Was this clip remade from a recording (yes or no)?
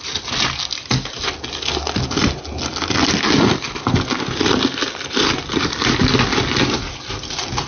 no